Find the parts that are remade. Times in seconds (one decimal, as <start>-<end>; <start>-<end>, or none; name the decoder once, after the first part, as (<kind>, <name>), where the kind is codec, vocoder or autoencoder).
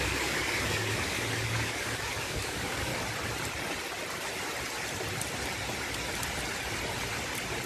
0.0-2.9 (codec, DAC)